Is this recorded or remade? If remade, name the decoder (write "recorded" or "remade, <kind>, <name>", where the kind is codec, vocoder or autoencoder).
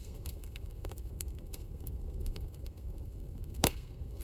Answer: remade, codec, SNAC